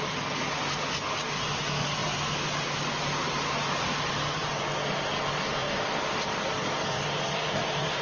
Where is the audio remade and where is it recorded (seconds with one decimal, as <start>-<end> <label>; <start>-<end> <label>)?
0.0-5.6 recorded; 5.6-8.0 remade